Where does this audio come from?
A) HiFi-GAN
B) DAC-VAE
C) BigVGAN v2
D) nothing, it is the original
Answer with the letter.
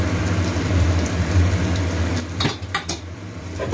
C